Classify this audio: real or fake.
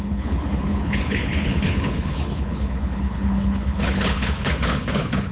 fake